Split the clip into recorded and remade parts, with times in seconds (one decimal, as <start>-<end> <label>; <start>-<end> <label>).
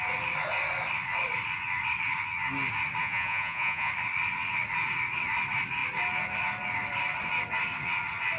0.0-3.0 recorded; 3.0-3.9 remade; 3.9-8.4 recorded